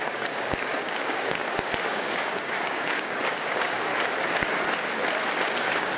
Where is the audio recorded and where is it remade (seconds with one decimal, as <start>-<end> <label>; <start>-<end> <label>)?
0.0-1.4 remade; 1.4-1.9 recorded; 1.9-3.9 remade; 3.9-5.6 recorded; 5.6-6.0 remade